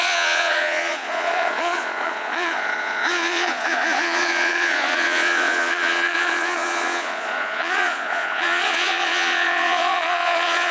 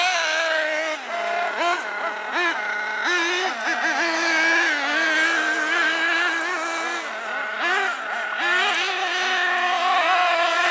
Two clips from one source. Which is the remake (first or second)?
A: first